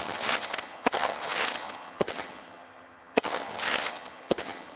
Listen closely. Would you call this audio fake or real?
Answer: fake